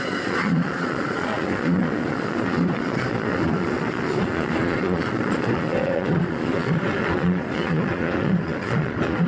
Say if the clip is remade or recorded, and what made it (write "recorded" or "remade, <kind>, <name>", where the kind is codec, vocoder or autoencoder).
remade, vocoder, Vocos